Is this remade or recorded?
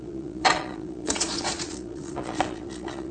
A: remade